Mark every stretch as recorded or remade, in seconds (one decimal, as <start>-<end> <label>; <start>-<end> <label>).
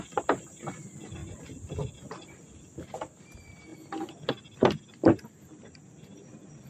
0.0-6.7 recorded